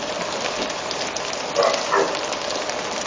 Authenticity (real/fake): real